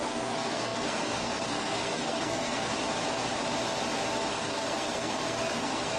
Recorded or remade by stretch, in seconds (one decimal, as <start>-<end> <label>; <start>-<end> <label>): 0.0-2.7 remade; 2.7-4.3 recorded; 4.3-6.0 remade